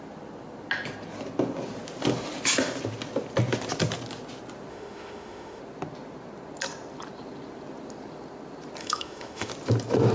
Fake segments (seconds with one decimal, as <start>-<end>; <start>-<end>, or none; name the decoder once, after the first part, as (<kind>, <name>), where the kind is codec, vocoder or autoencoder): 4.7-5.6 (autoencoder, DAC-VAE); 8.8-9.5